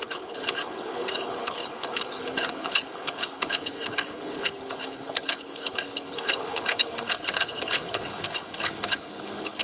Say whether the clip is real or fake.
fake